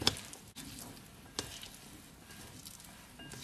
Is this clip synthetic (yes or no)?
no